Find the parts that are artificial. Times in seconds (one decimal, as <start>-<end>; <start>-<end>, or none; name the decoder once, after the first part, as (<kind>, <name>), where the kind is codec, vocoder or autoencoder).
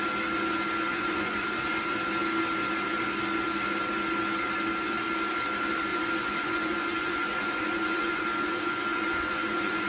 0.9-1.8 (vocoder, Vocos); 5.9-9.9